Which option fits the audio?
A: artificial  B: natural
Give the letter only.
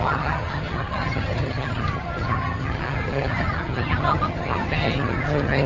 A